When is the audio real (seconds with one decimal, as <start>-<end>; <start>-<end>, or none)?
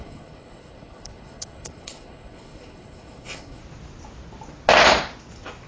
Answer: 3.6-5.7